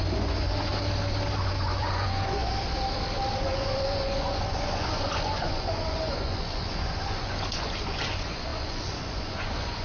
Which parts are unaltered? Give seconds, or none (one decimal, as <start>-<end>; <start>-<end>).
0.7-1.4; 2.4-3.4